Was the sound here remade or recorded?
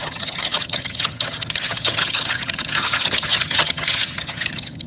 remade